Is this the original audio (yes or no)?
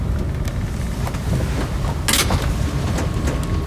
yes